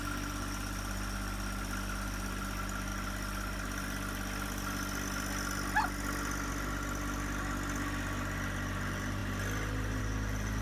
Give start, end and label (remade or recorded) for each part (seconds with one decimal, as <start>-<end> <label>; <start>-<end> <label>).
0.0-10.6 recorded